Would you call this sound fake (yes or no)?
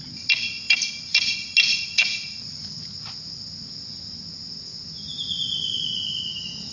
no